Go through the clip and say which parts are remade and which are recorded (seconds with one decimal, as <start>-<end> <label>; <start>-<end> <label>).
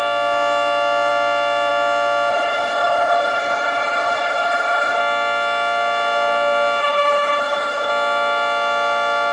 0.0-2.3 recorded; 2.3-5.0 remade; 5.0-6.8 recorded; 6.8-7.9 remade; 7.9-9.3 recorded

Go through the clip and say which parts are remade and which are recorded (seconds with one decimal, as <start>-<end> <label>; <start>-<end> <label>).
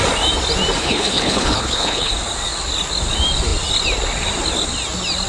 0.0-0.8 recorded; 0.8-2.1 remade; 2.1-5.3 recorded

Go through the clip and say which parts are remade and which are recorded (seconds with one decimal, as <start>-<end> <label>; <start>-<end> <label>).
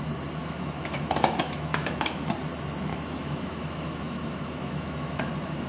0.0-0.4 recorded; 0.4-2.3 remade; 2.3-2.9 recorded; 2.9-5.2 remade; 5.2-5.7 recorded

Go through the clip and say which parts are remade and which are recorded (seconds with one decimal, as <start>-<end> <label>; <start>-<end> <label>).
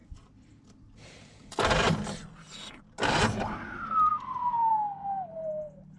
0.0-6.0 recorded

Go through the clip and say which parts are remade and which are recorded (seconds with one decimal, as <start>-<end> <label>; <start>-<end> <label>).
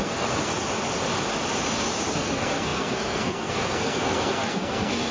0.0-0.5 remade; 0.5-2.1 recorded; 2.1-5.1 remade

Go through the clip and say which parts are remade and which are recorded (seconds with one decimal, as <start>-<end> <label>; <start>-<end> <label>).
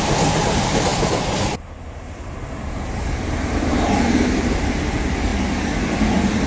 0.0-0.9 recorded; 0.9-4.8 remade; 4.8-6.5 recorded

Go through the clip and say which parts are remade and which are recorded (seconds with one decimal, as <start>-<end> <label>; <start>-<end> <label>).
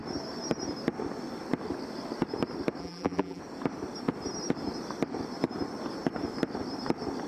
0.0-2.8 recorded; 2.8-3.4 remade; 3.4-7.3 recorded